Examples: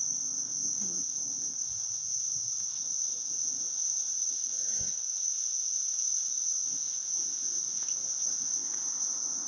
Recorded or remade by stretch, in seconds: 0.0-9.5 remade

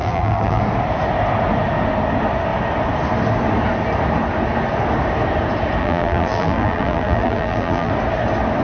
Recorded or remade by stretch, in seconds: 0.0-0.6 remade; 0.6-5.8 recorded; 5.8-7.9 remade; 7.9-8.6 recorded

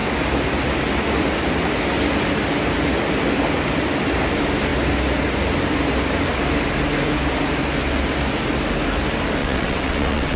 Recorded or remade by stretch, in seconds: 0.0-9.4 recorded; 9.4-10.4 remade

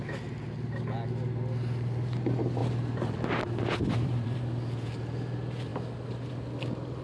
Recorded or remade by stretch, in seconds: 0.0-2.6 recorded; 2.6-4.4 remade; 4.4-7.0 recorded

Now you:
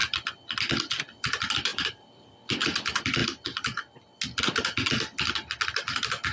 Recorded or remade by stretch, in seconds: 0.0-1.7 recorded; 1.7-2.3 remade; 2.3-6.3 recorded

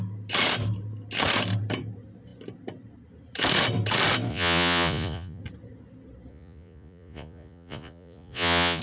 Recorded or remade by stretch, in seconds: 0.0-4.3 recorded; 4.3-5.4 remade; 5.4-6.3 recorded; 6.3-8.8 remade